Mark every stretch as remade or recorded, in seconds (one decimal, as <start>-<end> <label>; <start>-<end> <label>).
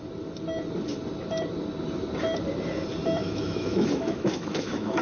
0.0-3.2 recorded; 3.2-5.0 remade